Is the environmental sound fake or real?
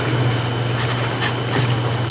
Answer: real